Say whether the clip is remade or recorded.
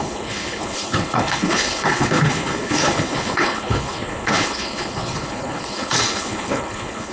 remade